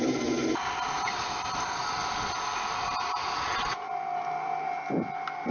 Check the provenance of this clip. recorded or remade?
recorded